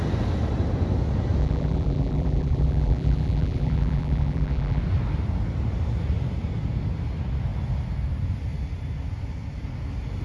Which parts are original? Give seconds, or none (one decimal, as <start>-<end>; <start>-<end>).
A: 0.0-1.4; 4.8-10.2

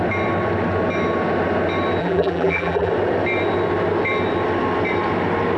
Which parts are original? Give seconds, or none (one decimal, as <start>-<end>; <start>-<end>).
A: 0.0-2.0; 2.9-5.6

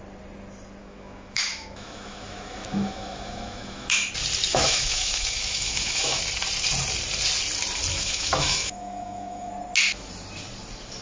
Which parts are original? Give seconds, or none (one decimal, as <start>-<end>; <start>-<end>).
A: 0.0-0.8; 4.1-4.5; 6.2-7.9; 9.5-11.0

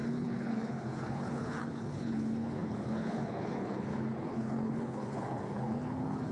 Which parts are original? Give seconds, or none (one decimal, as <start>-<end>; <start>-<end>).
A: none

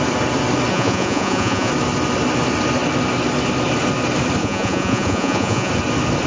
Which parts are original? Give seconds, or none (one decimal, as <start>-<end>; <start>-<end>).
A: 0.0-0.7; 1.7-4.4; 5.7-6.3

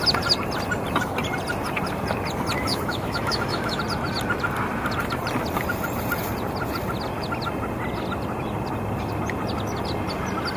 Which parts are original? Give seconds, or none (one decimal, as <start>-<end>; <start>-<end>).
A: 0.0-2.7; 3.8-10.6

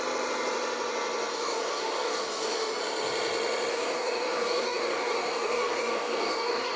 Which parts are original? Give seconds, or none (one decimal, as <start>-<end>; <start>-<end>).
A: 0.0-1.3; 2.8-3.7